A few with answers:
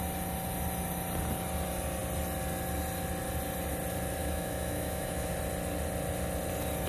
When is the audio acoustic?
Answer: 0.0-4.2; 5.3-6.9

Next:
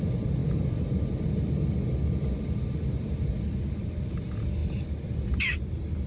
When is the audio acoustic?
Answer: 0.0-6.1

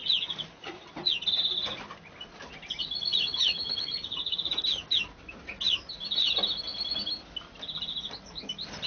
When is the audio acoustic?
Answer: 1.2-2.8; 4.6-7.9; 8.4-8.9

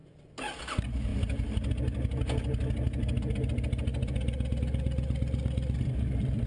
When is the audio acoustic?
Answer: 0.0-6.5

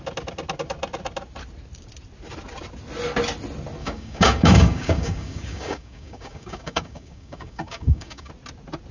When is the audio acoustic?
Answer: 0.0-3.8; 8.3-8.9

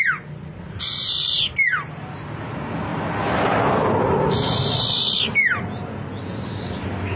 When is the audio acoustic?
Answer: 0.0-7.2

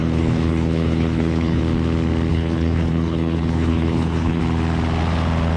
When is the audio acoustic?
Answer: 1.6-2.3; 4.4-5.6

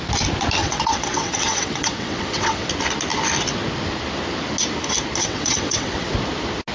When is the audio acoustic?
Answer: 0.0-0.6; 2.7-5.2; 6.1-6.7